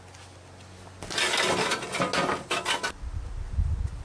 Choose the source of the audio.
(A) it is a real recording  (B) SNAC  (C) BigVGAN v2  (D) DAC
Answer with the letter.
A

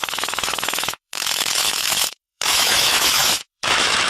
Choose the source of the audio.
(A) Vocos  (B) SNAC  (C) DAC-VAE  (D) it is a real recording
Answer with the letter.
C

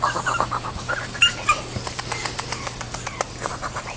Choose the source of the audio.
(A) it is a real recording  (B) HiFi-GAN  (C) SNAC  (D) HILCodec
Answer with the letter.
A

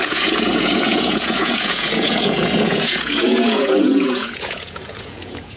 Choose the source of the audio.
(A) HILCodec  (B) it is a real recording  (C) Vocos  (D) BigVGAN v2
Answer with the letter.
C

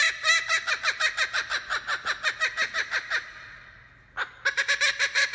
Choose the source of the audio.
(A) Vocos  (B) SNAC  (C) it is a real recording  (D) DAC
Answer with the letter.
C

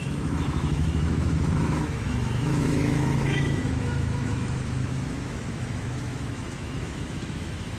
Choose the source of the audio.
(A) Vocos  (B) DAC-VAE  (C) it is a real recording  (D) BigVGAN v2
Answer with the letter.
B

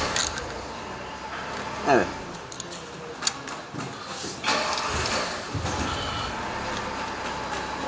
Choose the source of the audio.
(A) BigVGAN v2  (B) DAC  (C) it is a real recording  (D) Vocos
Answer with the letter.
C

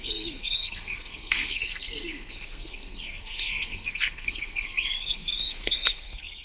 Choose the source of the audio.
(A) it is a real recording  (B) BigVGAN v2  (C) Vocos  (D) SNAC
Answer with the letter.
D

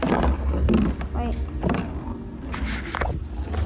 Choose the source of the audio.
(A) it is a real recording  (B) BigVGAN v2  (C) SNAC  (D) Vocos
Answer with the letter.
A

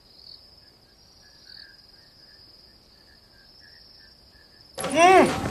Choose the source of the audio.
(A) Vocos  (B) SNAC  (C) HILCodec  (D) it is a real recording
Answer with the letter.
D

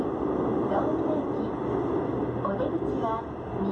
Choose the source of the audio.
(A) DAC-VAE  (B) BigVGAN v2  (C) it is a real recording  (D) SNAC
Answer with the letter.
C